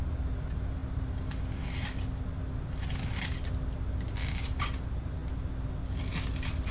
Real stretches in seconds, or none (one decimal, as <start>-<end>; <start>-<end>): 0.0-6.7